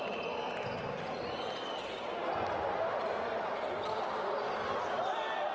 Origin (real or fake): real